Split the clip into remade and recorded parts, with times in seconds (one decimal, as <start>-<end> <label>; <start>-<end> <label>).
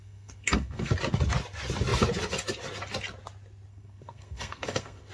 0.0-0.9 remade; 0.9-3.7 recorded; 3.7-5.1 remade